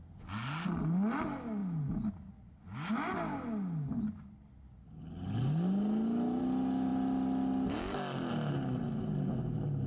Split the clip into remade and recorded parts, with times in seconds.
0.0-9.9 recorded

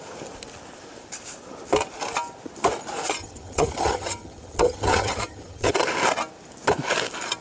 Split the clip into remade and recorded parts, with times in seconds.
0.0-3.2 recorded; 3.2-5.7 remade; 5.7-7.4 recorded

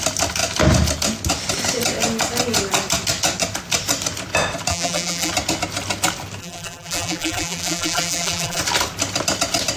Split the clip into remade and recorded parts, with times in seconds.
0.0-4.7 recorded; 4.7-5.3 remade; 5.3-6.4 recorded; 6.4-8.6 remade; 8.6-9.8 recorded

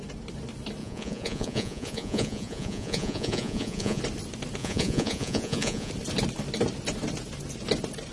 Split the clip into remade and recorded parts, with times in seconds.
0.0-0.8 recorded; 0.8-4.0 remade; 4.0-4.6 recorded; 4.6-5.9 remade; 5.9-8.1 recorded

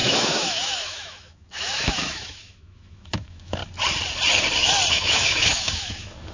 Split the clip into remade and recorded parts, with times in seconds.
0.0-3.6 remade; 3.6-4.9 recorded; 4.9-6.3 remade